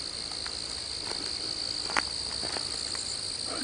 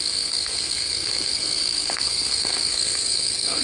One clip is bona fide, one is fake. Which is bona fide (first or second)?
first